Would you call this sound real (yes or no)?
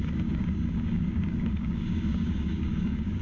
no